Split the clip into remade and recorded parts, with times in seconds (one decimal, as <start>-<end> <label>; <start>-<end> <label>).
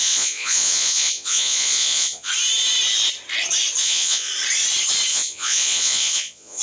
0.0-2.3 remade; 2.3-3.8 recorded; 3.8-4.3 remade; 4.3-5.1 recorded; 5.1-6.6 remade